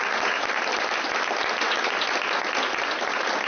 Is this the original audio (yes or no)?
yes